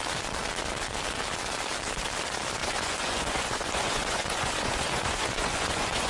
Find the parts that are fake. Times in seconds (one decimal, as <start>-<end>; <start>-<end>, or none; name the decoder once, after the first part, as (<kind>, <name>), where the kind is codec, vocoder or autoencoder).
2.6-6.1 (vocoder, Vocos)